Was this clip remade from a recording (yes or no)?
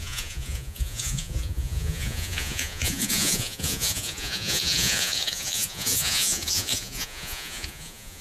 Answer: yes